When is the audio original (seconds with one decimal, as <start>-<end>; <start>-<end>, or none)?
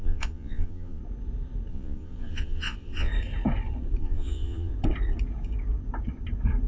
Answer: 1.0-1.7; 3.1-4.0; 4.7-6.7